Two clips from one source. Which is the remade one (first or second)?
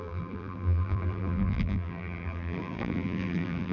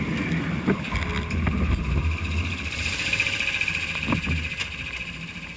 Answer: first